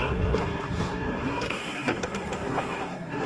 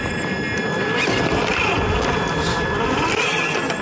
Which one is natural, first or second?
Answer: second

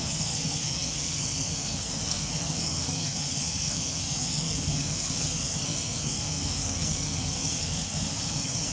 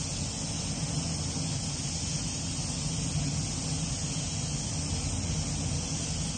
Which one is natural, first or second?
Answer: second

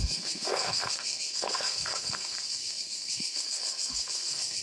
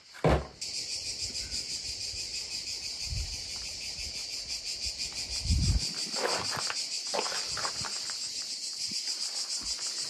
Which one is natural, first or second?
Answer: second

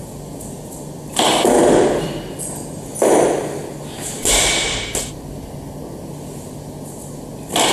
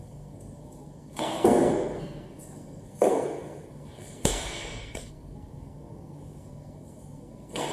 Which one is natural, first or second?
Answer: first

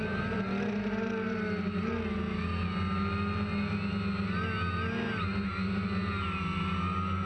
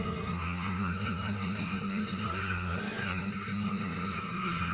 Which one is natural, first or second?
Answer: first